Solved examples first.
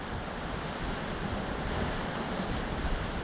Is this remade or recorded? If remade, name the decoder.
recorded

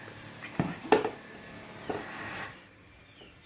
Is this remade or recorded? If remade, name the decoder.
recorded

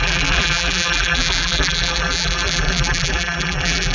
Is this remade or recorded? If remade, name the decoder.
remade, vocoder, BigVGAN v2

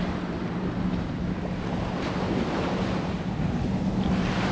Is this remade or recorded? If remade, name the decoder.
recorded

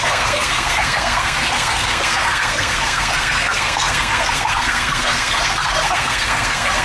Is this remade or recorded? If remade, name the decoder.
remade, codec, SNAC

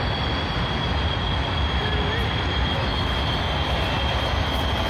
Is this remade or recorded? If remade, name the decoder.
recorded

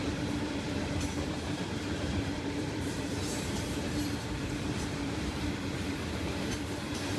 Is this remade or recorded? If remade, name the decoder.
remade, vocoder, BigVGAN v2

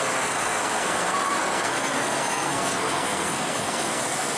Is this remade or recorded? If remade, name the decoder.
remade, codec, SNAC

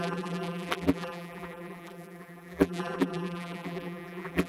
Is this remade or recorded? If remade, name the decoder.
remade, vocoder, BigVGAN v2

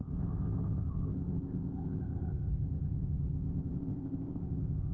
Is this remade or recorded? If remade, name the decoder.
remade, codec, ZipCodec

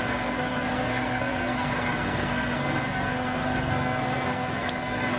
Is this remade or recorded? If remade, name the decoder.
remade, codec, SNAC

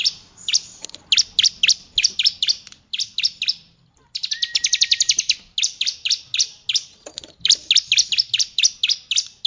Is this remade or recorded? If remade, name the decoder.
recorded